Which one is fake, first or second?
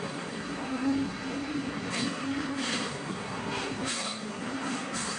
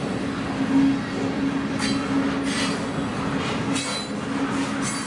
first